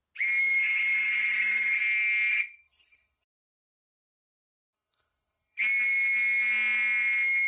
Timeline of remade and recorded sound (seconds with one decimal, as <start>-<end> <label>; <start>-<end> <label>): 0.0-0.4 recorded; 0.4-1.8 remade; 1.8-2.3 recorded; 2.3-5.6 remade; 5.6-7.5 recorded